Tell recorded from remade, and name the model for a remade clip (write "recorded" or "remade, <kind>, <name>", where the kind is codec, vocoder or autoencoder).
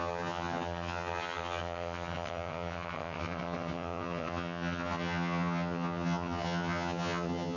remade, vocoder, HiFi-GAN